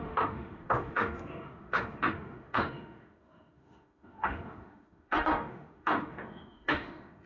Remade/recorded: remade